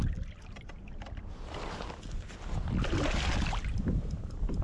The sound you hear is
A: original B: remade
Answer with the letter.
A